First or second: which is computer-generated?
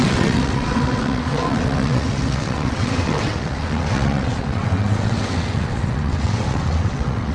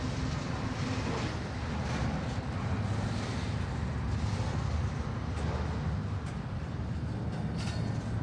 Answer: first